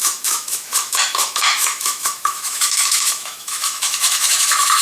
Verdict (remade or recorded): remade